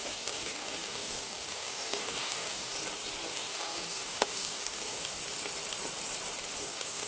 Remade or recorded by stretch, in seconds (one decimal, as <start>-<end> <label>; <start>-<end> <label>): 0.0-2.7 remade; 2.7-3.3 recorded; 3.3-5.2 remade; 5.2-6.6 recorded; 6.6-7.1 remade